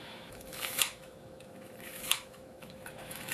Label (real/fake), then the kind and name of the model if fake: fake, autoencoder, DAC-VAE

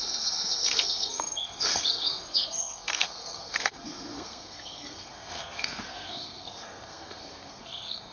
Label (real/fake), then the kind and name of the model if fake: fake, codec, SNAC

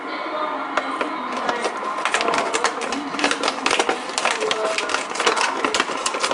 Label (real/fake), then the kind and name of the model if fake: real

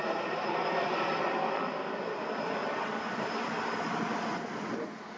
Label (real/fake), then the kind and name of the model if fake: fake, vocoder, BigVGAN v2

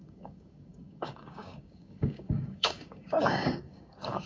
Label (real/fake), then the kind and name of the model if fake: fake, codec, DAC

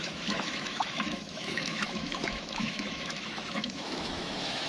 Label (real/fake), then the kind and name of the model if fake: fake, autoencoder, DAC-VAE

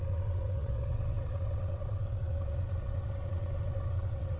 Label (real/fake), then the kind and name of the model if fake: fake, vocoder, WaveNeXt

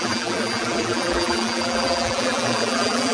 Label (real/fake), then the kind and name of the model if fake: fake, vocoder, BigVGAN v2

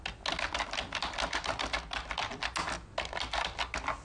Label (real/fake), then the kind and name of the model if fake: real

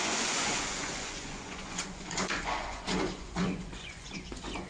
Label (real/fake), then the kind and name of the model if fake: fake, vocoder, Vocos